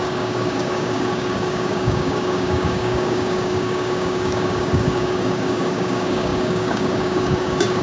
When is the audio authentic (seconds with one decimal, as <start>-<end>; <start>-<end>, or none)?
none

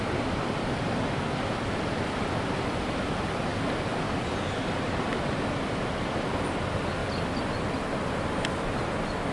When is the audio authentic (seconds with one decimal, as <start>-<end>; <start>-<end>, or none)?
0.0-9.3

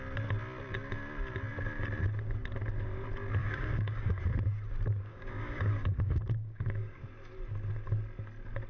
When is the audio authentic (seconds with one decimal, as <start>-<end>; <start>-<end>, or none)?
0.0-3.4; 4.2-5.1; 7.0-8.7